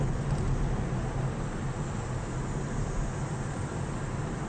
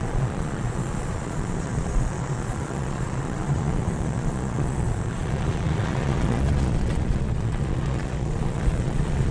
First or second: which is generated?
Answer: second